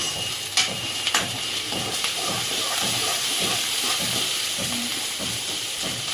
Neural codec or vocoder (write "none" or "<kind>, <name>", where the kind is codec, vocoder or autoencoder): vocoder, BigVGAN v2